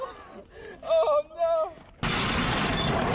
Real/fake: real